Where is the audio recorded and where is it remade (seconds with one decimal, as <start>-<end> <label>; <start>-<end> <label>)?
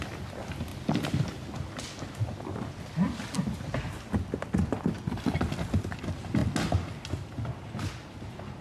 0.0-8.6 recorded